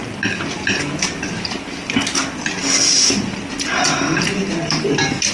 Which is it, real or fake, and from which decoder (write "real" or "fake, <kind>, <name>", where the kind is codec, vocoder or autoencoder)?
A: real